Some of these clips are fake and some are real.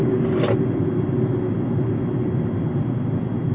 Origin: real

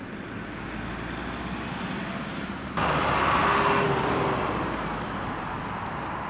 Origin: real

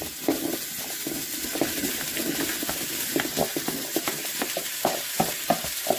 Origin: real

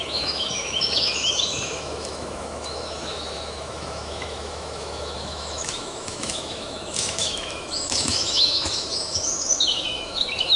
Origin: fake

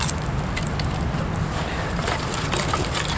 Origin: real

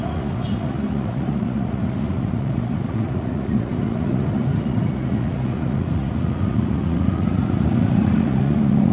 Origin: fake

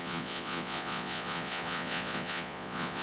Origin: fake